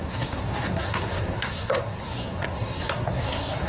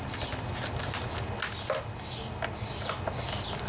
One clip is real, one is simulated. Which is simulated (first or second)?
first